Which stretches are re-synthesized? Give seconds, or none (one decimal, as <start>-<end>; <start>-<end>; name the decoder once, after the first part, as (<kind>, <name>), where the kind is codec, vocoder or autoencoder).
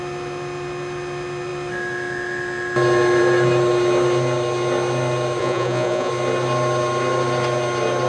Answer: 5.4-6.1 (vocoder, Vocos)